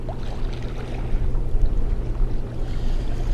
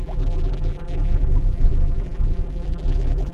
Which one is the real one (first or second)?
first